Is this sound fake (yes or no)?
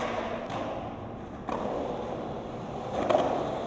no